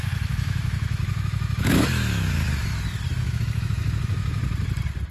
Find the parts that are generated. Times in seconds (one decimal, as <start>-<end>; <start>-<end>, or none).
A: 0.0-2.7; 3.2-4.4